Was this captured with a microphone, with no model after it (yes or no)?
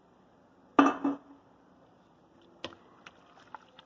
yes